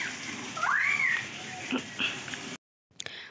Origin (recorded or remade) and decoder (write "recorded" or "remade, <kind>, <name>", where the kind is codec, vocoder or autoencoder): recorded